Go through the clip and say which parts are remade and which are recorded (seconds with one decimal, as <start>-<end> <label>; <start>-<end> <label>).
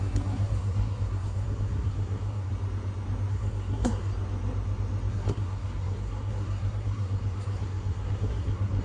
0.0-2.5 remade; 2.5-3.3 recorded; 3.3-4.1 remade; 4.1-5.1 recorded; 5.1-8.8 remade